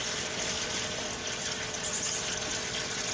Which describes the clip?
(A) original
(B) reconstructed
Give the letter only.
B